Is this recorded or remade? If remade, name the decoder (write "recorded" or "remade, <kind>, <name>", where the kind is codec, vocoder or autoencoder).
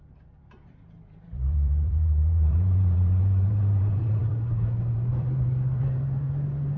remade, vocoder, BigVGAN v2